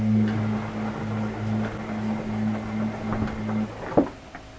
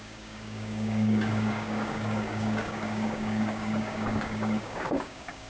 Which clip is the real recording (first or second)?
first